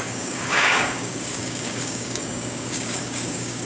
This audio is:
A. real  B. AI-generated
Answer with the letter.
B